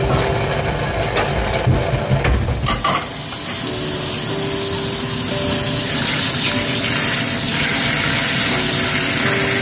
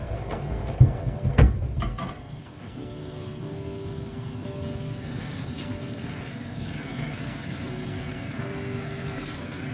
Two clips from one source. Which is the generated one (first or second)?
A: second